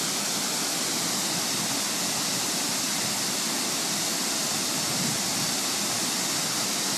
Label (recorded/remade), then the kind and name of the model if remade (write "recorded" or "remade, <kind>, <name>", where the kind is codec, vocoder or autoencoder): recorded